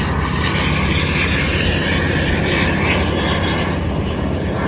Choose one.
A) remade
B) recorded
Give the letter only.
B